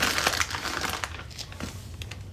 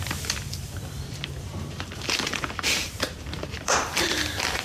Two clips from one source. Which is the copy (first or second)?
second